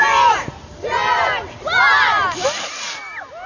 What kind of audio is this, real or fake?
real